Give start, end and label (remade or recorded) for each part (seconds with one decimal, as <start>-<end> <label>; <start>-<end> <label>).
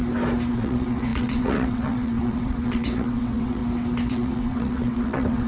0.0-0.5 recorded; 0.5-3.6 remade; 3.6-4.1 recorded; 4.1-5.5 remade